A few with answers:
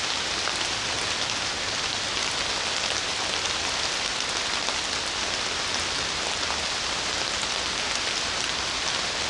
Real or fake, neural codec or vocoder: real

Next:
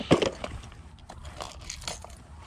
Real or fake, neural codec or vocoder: real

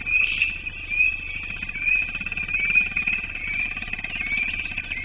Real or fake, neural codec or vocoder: real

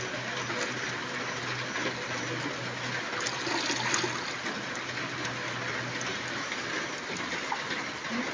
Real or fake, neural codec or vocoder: real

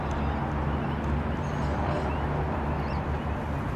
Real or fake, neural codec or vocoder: real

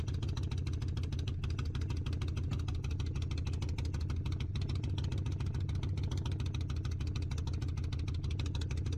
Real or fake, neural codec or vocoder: real